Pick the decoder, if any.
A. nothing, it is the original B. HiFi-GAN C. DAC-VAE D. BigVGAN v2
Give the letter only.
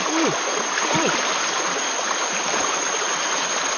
D